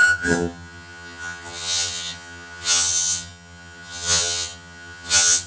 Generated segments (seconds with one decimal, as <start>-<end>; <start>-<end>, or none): 0.0-5.5